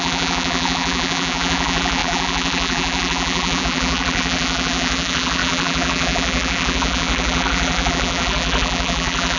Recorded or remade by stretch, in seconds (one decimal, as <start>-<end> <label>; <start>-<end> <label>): 0.0-9.4 remade